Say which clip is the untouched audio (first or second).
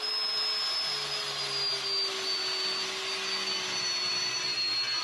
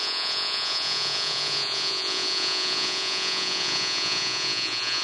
first